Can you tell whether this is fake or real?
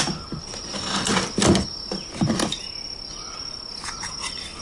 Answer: real